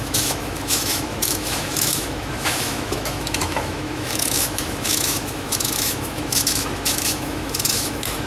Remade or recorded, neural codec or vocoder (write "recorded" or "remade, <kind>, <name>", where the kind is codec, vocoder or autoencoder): remade, autoencoder, DAC-VAE